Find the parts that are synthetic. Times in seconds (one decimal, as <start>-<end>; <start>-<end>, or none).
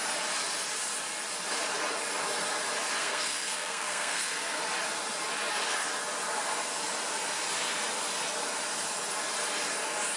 3.0-4.6